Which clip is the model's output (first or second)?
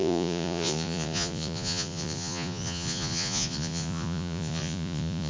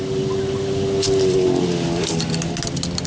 first